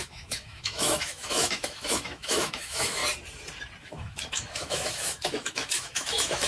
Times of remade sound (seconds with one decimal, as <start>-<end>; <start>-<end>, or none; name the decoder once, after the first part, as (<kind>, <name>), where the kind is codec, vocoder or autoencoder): 0.0-3.0 (autoencoder, DAC-VAE); 3.8-6.5